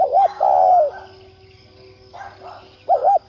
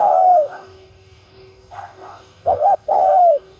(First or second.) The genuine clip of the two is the first